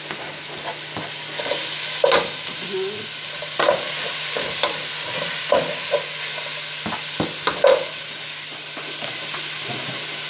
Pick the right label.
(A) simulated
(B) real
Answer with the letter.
B